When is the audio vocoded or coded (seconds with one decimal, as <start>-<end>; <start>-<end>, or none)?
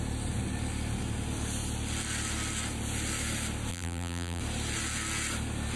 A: 3.7-4.4